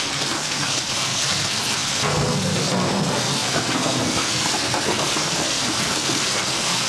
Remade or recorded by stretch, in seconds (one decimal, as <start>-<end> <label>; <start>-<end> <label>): 0.0-6.9 remade